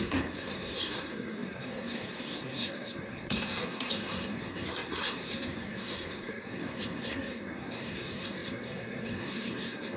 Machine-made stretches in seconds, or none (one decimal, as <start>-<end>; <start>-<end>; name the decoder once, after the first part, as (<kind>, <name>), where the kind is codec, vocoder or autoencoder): 0.0-10.0 (codec, SNAC)